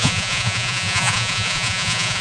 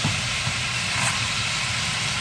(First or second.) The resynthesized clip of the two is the first